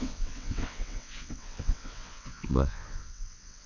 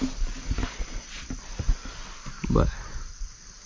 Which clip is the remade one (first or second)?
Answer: first